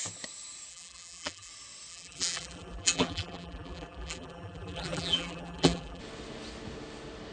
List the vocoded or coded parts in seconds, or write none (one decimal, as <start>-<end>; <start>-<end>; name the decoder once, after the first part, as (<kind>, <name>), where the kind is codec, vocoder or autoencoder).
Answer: 0.7-1.5 (vocoder, BigVGAN v2); 1.9-6.0